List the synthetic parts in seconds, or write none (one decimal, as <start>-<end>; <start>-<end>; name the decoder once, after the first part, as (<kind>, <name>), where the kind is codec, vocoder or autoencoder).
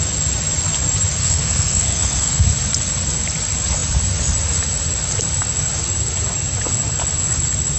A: 1.2-2.4 (codec, SNAC)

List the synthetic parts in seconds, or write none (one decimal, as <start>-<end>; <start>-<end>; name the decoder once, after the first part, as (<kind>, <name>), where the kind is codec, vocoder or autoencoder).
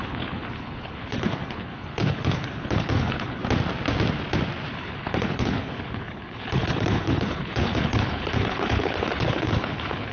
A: 0.0-3.4 (codec, HILCodec); 4.7-10.1